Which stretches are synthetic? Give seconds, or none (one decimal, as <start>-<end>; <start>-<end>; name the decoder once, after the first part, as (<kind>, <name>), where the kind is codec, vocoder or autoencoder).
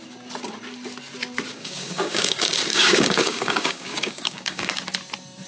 1.5-4.8 (codec, DAC)